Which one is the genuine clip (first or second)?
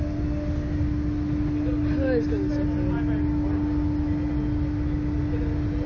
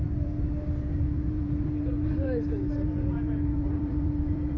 first